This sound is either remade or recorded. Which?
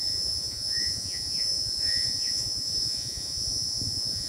remade